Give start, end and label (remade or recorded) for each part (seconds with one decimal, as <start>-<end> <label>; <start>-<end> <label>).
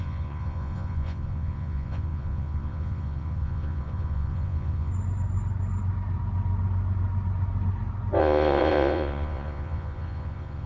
0.0-4.9 remade; 4.9-8.2 recorded; 8.2-10.7 remade